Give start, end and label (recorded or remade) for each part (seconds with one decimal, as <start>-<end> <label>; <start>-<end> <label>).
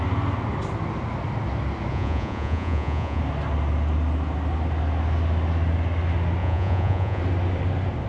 0.0-1.9 recorded; 1.9-3.2 remade; 3.2-6.4 recorded; 6.4-7.2 remade; 7.2-8.1 recorded